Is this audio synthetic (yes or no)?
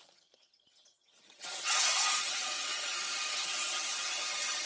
yes